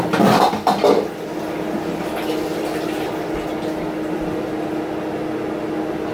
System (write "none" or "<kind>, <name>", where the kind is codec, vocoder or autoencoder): none